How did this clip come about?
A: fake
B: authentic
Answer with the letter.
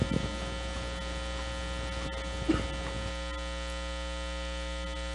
B